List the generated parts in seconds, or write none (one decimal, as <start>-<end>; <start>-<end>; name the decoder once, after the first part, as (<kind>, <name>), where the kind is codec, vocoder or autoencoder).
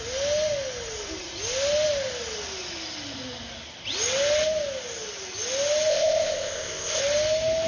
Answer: 5.9-7.0 (codec, ZipCodec)